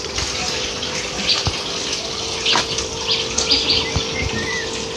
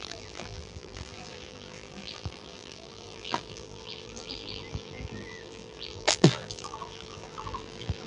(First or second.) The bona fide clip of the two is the first